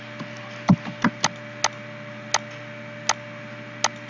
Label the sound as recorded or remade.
recorded